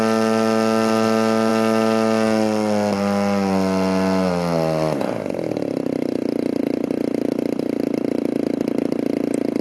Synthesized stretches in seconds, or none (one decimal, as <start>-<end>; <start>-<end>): none